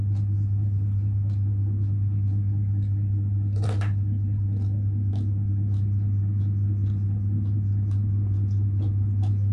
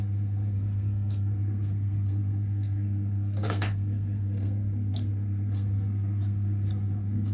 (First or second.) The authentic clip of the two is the first